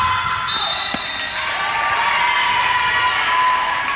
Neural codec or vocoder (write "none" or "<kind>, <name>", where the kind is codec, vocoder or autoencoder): none